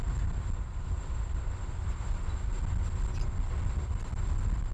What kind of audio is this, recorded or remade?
recorded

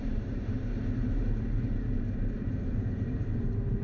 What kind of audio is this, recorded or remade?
remade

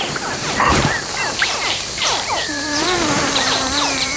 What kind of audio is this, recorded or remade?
remade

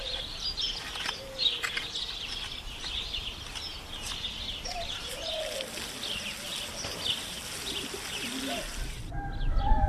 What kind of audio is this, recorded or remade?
recorded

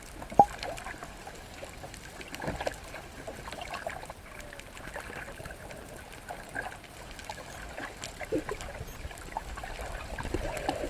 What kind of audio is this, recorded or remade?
recorded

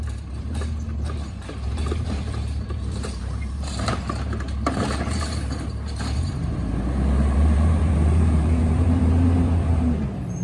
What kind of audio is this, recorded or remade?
remade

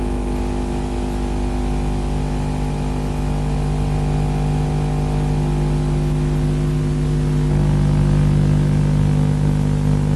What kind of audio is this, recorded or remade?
recorded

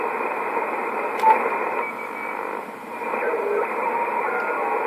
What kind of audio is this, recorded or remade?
remade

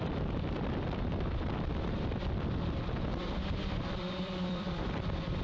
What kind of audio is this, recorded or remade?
remade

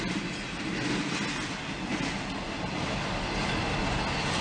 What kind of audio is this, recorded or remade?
recorded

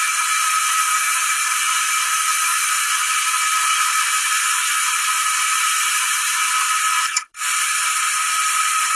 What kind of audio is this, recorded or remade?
remade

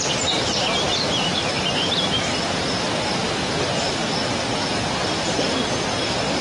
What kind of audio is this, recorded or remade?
remade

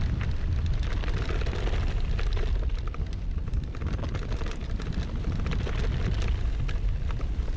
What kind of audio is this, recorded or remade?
recorded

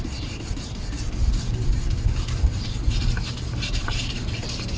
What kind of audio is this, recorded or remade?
remade